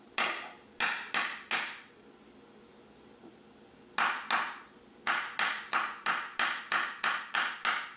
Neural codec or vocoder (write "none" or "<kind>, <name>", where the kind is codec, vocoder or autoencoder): none